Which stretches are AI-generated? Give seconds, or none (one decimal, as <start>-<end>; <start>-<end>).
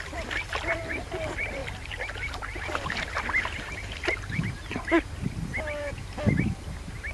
1.6-5.9